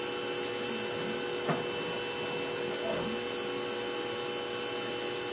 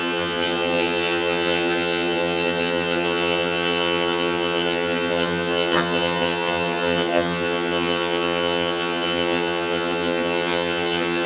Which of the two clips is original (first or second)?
first